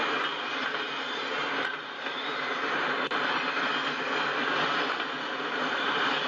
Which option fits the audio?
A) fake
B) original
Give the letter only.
B